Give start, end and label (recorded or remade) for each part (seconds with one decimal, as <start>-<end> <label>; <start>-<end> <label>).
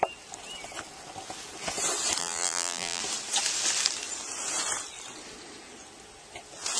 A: 0.0-2.2 recorded; 2.2-3.0 remade; 3.0-6.8 recorded